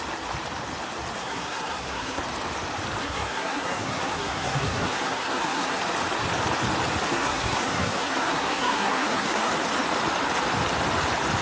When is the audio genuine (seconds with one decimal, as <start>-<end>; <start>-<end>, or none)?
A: 0.0-1.2; 2.2-3.0; 5.8-7.1; 9.5-11.4